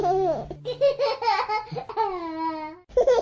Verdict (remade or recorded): recorded